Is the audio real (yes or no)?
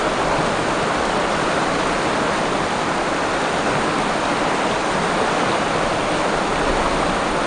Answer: yes